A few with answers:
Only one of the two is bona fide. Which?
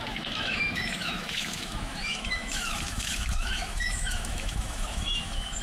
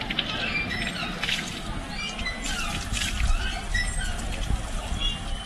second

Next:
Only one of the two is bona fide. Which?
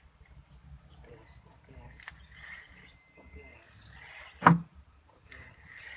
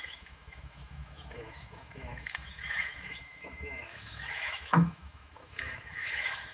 first